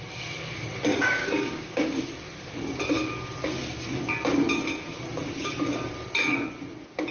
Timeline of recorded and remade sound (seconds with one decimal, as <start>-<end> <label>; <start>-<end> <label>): 0.0-0.9 recorded; 0.9-2.0 remade; 2.0-7.1 recorded